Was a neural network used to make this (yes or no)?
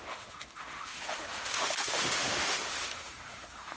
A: yes